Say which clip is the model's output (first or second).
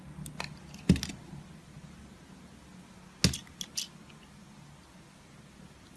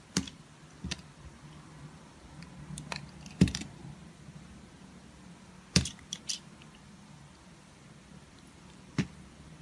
second